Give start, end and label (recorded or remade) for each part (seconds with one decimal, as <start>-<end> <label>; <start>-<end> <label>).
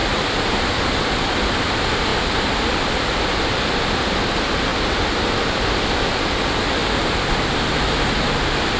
0.0-1.0 remade; 1.0-2.1 recorded; 2.1-4.2 remade; 4.2-4.7 recorded; 4.7-6.2 remade; 6.2-8.8 recorded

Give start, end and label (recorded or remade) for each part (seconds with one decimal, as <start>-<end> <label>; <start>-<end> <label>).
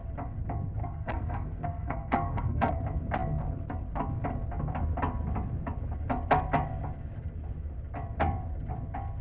0.0-0.8 recorded; 0.8-2.8 remade; 2.8-9.2 recorded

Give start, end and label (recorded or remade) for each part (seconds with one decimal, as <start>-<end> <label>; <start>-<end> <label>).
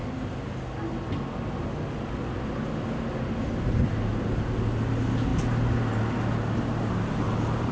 0.0-7.7 recorded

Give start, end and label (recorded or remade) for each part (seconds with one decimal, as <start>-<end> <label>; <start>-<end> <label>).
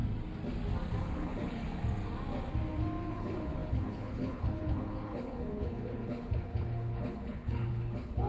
0.0-1.0 recorded; 1.0-1.8 remade; 1.8-3.1 recorded; 3.1-8.3 remade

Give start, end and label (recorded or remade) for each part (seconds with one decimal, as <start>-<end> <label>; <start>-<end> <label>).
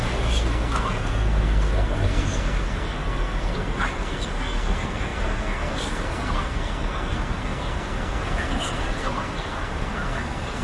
0.0-10.6 remade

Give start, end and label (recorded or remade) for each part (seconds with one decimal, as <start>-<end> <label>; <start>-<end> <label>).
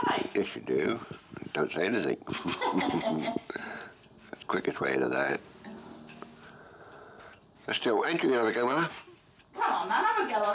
0.0-10.5 recorded